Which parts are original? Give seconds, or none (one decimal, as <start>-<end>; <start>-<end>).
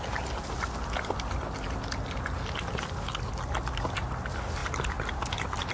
0.0-5.7